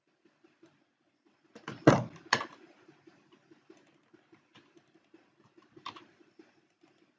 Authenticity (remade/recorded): recorded